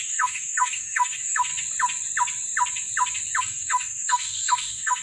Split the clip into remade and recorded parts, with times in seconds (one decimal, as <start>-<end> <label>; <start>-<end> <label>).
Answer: 0.0-1.5 remade; 1.5-3.4 recorded; 3.4-5.0 remade